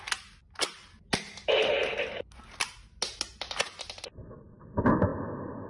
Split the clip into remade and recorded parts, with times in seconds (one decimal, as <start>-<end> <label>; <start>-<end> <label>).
0.0-5.7 recorded